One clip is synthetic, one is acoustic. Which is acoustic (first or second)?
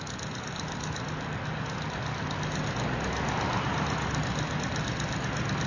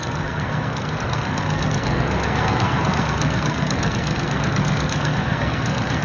first